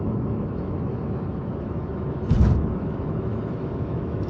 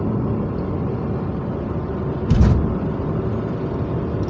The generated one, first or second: first